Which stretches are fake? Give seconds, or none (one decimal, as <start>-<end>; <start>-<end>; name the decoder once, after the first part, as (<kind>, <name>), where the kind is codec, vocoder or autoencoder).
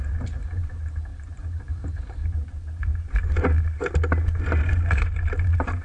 0.0-2.9 (vocoder, BigVGAN v2); 4.7-5.8